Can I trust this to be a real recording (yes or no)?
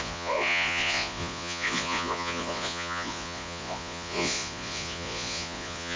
no